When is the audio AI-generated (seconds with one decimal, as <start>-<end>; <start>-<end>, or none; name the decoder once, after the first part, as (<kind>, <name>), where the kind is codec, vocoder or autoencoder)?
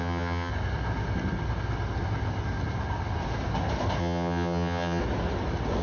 0.0-0.5 (vocoder, HiFi-GAN); 4.0-5.0